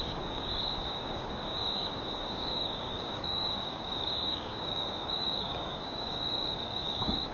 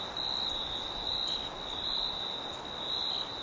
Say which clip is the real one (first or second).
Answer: second